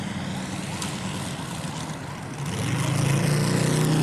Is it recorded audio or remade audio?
recorded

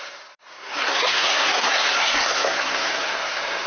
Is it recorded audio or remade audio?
remade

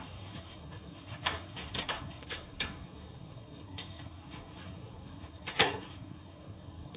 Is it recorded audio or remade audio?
remade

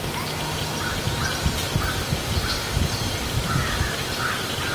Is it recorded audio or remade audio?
recorded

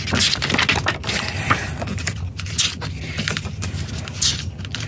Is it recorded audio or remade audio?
recorded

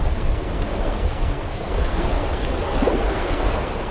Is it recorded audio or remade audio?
remade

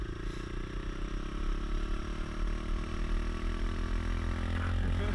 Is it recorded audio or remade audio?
recorded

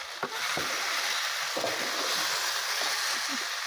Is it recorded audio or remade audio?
recorded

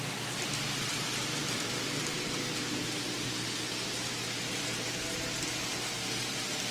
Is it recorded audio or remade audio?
recorded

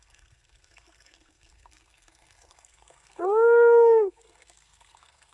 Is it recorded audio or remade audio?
remade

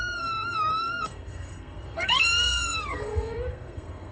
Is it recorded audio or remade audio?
remade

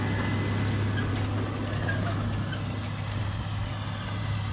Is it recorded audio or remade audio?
recorded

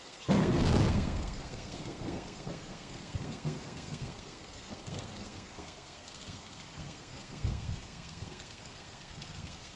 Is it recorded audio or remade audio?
remade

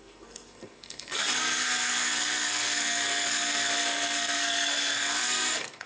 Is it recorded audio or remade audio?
remade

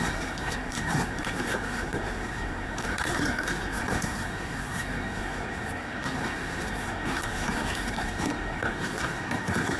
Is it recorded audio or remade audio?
remade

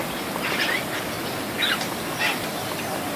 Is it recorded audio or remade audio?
recorded